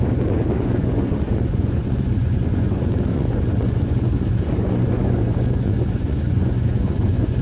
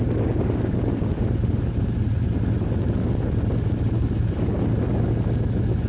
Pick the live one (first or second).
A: second